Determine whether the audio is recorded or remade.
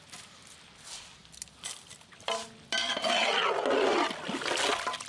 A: recorded